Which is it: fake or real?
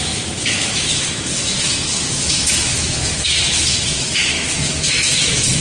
fake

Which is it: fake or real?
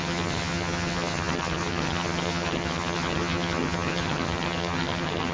fake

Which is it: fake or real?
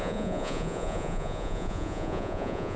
fake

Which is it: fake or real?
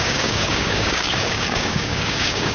fake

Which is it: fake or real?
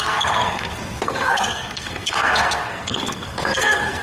fake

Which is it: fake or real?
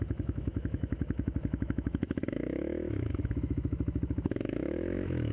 fake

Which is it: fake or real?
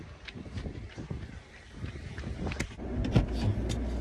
real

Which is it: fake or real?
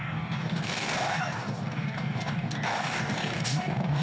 fake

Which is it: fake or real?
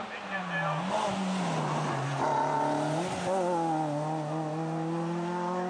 real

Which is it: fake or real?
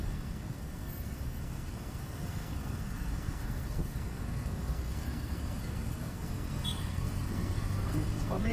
fake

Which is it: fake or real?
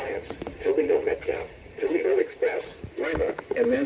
fake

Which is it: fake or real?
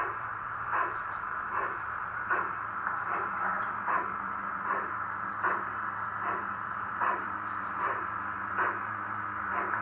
real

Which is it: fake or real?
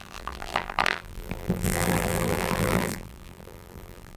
fake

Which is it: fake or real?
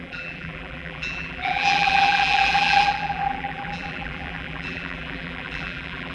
fake